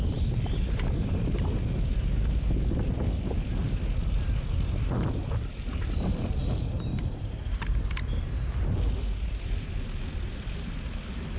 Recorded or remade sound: recorded